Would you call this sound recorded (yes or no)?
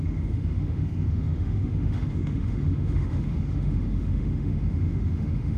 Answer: no